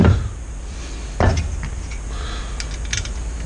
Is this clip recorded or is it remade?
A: recorded